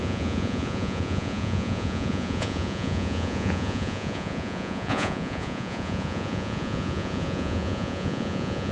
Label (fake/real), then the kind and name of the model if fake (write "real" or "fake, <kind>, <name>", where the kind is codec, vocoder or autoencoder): fake, vocoder, Vocos